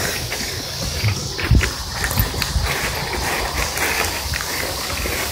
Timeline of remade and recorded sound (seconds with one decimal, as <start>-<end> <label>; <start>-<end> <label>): 0.0-1.2 remade; 1.2-3.9 recorded; 3.9-5.3 remade